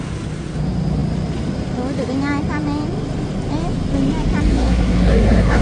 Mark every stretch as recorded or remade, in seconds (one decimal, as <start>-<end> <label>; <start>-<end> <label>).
0.0-4.5 recorded; 4.5-5.6 remade